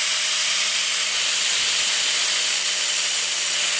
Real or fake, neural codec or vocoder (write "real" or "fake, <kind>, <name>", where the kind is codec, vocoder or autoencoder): real